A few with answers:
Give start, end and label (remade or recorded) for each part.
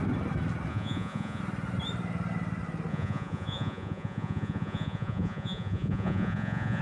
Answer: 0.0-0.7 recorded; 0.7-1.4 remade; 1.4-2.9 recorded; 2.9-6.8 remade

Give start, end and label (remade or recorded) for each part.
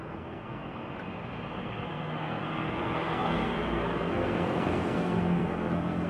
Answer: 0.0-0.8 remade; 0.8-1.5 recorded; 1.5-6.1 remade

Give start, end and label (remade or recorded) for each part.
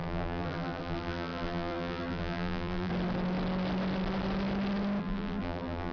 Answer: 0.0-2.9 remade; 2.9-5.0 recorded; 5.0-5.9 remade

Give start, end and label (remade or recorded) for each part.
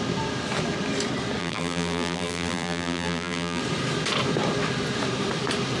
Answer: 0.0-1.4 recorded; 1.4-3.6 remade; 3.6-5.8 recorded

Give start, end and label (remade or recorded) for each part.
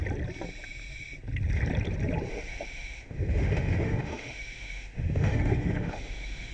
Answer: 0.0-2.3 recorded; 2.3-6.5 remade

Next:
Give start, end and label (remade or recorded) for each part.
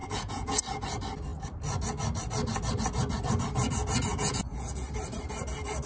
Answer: 0.0-0.6 remade; 0.6-4.1 recorded; 4.1-4.9 remade; 4.9-5.9 recorded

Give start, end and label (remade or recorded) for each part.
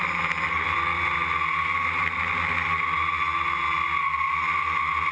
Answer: 0.0-5.1 recorded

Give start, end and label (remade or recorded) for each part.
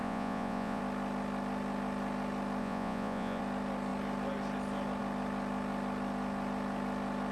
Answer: 0.0-0.8 remade; 0.8-2.6 recorded; 2.6-3.4 remade; 3.4-7.3 recorded